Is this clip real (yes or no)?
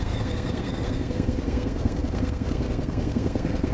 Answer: no